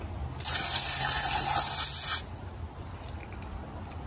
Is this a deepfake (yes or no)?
no